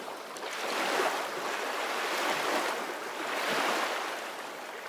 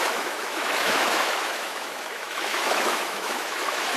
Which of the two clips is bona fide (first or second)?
first